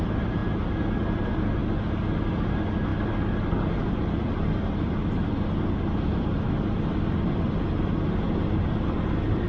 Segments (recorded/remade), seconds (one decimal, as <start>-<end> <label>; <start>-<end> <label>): 0.0-9.5 recorded